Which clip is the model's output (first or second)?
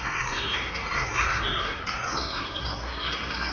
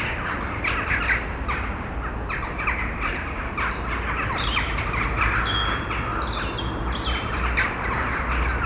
first